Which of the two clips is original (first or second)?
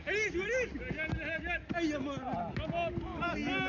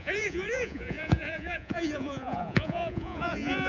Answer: first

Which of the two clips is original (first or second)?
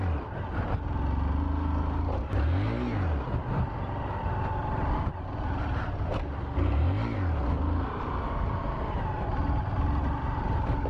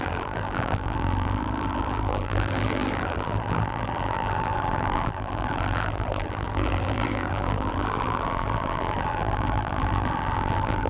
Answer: first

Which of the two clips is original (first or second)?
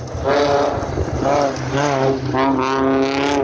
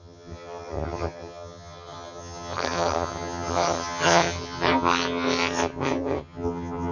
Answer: first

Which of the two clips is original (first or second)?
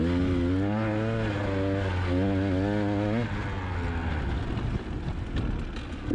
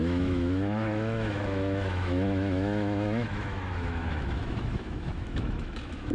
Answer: first